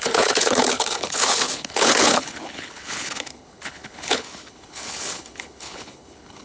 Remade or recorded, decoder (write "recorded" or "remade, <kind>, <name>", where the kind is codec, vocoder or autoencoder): remade, codec, HILCodec